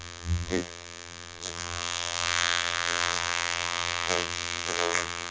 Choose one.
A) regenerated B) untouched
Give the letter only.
A